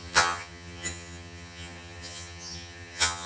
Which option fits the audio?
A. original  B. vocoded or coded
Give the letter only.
B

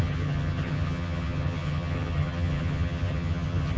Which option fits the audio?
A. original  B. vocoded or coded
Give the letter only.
B